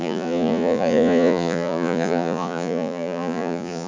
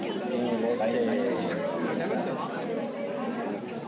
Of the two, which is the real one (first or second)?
second